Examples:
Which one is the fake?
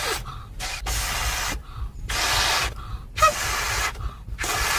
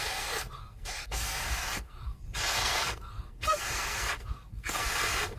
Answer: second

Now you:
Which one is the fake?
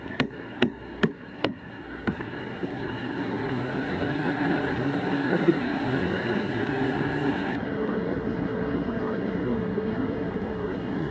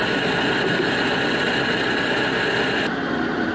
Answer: first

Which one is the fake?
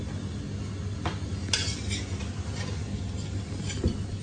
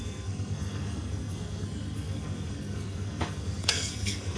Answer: second